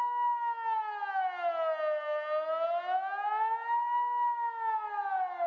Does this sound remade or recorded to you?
recorded